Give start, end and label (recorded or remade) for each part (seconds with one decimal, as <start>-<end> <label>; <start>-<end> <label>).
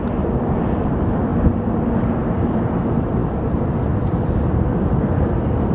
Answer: 0.0-1.3 remade; 1.3-2.3 recorded; 2.3-5.7 remade